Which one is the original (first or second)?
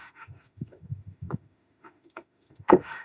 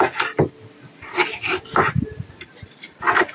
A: second